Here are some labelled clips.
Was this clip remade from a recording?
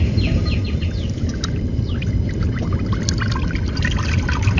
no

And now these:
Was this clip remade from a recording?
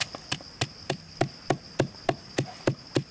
no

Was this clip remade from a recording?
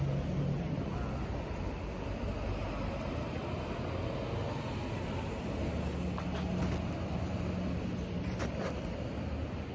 no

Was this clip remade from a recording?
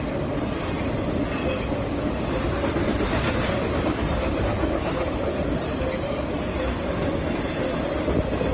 no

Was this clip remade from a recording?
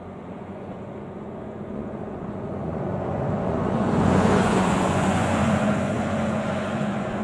yes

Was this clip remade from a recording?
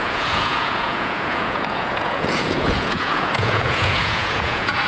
yes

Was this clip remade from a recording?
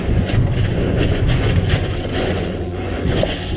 yes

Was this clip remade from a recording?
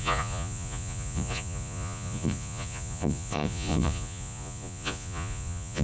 yes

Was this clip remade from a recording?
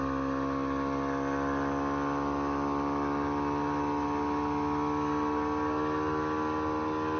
no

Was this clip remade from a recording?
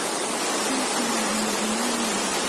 no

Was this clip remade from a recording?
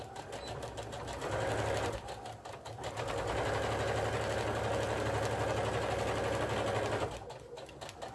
no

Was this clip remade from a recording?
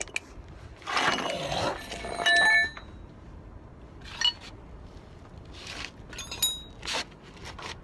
no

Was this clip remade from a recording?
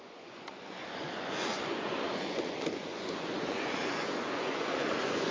yes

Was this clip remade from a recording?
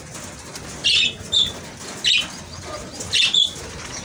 no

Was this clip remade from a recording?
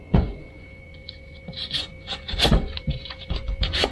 yes